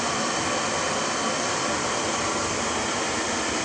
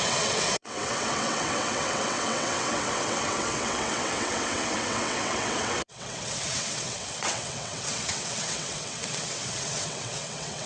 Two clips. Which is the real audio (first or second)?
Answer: first